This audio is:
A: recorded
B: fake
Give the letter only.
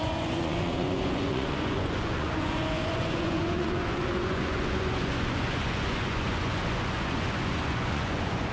B